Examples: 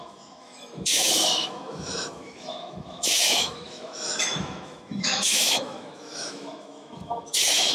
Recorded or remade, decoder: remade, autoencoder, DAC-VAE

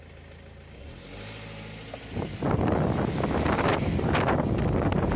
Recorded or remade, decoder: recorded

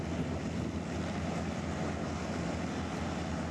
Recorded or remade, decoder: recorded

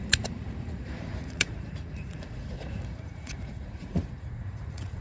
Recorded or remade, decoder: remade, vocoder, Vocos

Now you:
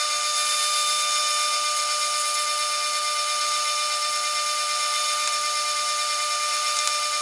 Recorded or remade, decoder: recorded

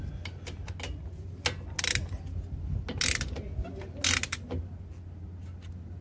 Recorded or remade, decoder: recorded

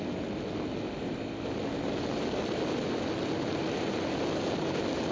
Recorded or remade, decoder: recorded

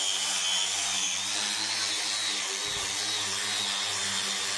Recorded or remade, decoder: recorded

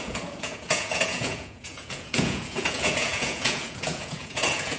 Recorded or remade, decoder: remade, vocoder, Vocos